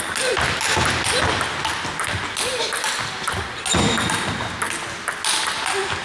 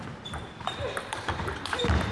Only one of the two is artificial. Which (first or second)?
second